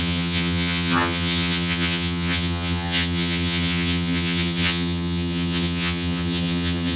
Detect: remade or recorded remade